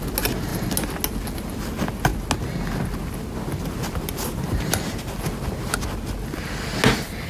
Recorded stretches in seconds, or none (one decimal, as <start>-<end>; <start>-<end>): 0.0-7.3

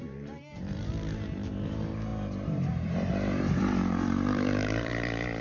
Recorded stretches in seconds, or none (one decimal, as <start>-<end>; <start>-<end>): 4.9-5.4

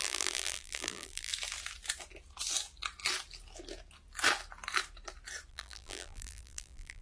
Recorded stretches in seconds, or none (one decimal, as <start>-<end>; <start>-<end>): 1.3-5.5